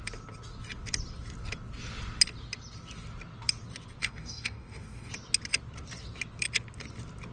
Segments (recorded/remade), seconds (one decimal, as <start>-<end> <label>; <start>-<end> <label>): 0.0-4.0 recorded; 4.0-5.1 remade; 5.1-7.3 recorded